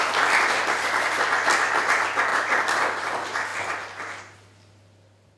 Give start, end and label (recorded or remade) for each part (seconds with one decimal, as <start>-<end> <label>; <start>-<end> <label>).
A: 0.0-5.4 recorded